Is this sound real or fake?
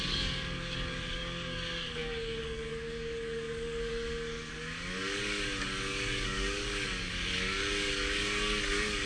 fake